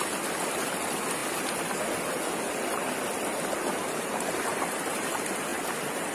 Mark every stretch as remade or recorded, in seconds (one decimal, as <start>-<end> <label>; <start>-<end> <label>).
0.0-6.1 recorded

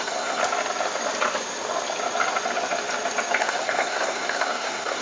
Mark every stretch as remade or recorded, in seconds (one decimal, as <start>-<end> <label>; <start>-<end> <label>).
0.0-0.4 remade; 0.4-3.4 recorded; 3.4-5.0 remade